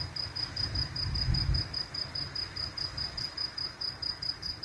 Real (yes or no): no